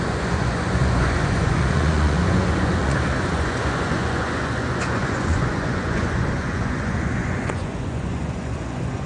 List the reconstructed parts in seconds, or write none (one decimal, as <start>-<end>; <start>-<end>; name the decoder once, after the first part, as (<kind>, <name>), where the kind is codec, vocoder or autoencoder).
0.0-9.1 (vocoder, Vocos)